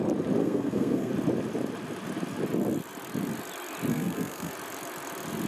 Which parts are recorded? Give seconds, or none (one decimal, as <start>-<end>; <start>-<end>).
0.0-0.4; 1.1-3.9; 4.5-5.5